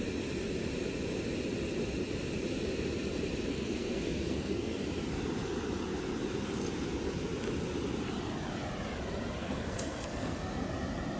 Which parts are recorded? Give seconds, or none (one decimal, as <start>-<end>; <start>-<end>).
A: 0.0-3.5; 4.8-9.4; 10.7-11.2